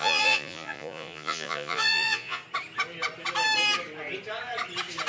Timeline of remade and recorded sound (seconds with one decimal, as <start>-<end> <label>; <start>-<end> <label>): 0.0-2.4 remade; 2.4-5.1 recorded